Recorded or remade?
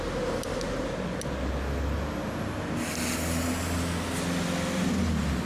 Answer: recorded